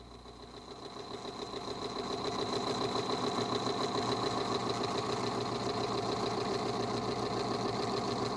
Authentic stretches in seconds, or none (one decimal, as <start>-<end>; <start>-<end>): 0.0-8.4

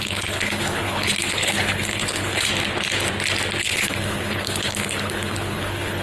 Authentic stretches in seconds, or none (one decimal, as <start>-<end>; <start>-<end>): 2.5-3.6

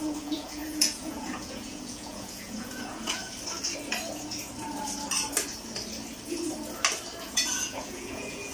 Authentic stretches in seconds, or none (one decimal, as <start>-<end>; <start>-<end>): 3.2-7.2

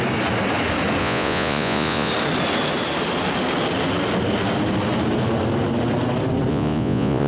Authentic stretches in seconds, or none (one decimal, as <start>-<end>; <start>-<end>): 0.0-1.0; 2.1-6.5

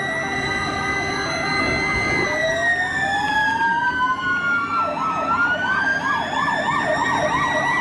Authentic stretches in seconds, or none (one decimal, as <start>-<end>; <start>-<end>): 0.0-7.8

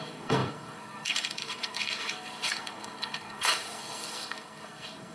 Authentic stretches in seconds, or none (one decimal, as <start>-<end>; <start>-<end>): none

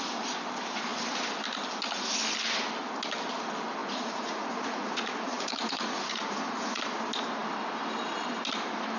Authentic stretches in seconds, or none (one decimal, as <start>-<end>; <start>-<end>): 0.0-3.8; 6.8-9.0

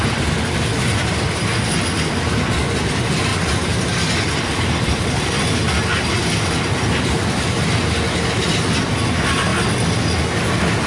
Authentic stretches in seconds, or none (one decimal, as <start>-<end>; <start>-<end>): 0.0-3.3; 5.3-10.9